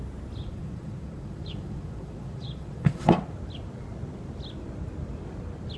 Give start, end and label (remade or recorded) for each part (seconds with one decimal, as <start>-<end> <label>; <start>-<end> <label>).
0.0-0.4 recorded; 0.4-3.2 remade; 3.2-5.8 recorded